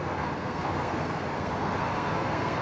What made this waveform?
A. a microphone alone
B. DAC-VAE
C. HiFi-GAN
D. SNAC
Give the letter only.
D